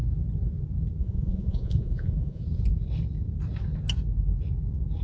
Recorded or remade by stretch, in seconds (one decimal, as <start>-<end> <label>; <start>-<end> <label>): 0.0-1.0 recorded; 1.0-2.4 remade; 2.4-5.0 recorded